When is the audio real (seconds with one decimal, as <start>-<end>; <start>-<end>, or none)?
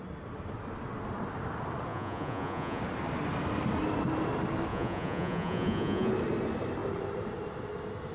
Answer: 0.0-1.9; 2.8-4.7; 6.1-8.1